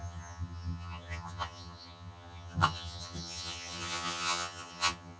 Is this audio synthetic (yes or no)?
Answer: yes